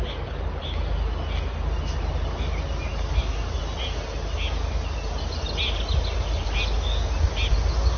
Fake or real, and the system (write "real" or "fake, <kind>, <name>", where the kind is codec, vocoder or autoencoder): real